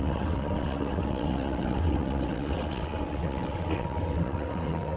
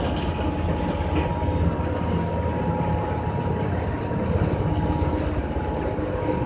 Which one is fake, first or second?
first